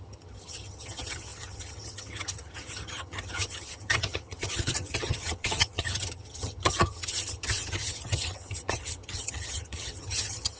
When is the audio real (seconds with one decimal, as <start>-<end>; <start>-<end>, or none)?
none

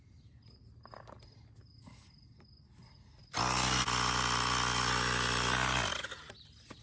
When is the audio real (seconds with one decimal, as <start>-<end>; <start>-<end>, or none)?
0.0-6.8

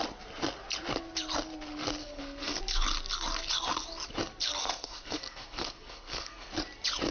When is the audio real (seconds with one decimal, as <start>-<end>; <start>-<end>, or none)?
0.0-2.0; 2.6-4.6; 6.5-7.1

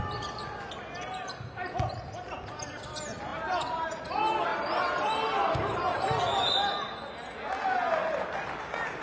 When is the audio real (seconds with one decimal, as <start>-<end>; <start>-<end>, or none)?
0.0-3.3; 4.0-4.5; 6.5-9.0

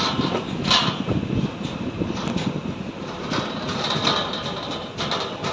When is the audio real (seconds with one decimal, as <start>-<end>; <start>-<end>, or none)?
0.0-5.5

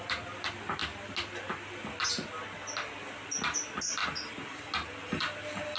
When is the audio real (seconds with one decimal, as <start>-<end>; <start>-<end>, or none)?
0.0-5.8

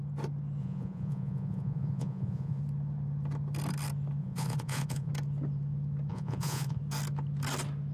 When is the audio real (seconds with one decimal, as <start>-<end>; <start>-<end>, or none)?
0.0-0.6; 2.6-4.2; 5.1-6.1; 6.8-7.9

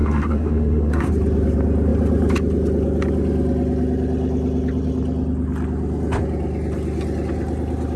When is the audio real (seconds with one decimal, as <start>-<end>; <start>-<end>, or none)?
1.1-8.0